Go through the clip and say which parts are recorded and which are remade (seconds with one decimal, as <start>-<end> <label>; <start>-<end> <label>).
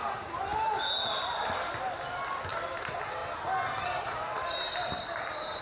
0.0-5.6 recorded